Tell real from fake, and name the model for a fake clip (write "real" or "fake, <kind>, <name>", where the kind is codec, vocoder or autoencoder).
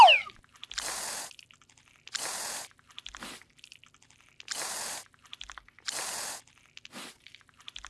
real